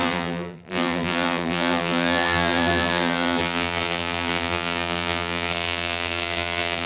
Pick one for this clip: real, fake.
fake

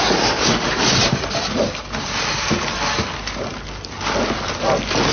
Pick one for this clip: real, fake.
real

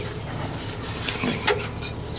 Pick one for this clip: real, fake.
real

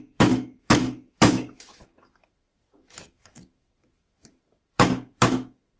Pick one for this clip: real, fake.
fake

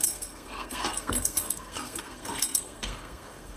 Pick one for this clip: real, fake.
fake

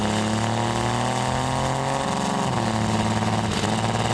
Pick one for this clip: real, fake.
real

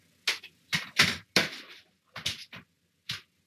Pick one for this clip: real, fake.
real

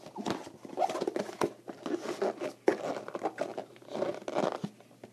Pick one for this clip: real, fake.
real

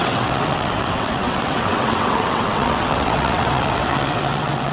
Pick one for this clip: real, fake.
fake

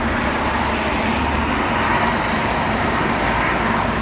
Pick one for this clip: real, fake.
real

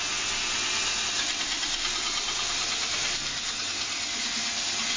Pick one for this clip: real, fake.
real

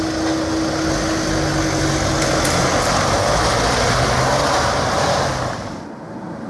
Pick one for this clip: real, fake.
real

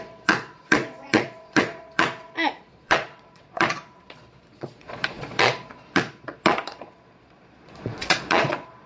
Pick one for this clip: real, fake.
fake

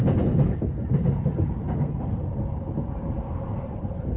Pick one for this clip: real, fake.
real